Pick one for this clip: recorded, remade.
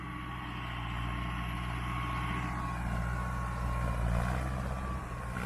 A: recorded